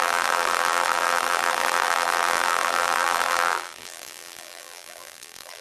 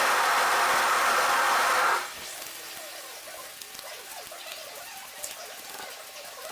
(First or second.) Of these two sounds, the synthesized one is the first